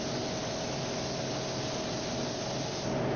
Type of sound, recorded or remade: recorded